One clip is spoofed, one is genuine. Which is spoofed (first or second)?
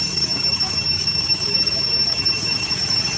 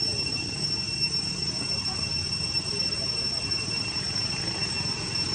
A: first